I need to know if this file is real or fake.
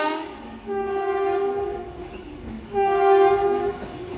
fake